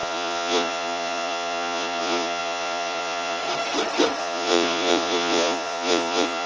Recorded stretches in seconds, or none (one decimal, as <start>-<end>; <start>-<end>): 3.4-4.2